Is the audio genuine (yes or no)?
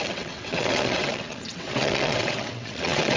no